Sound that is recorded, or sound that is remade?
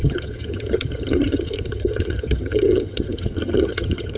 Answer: remade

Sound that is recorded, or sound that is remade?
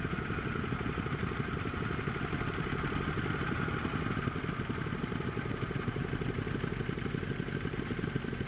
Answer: recorded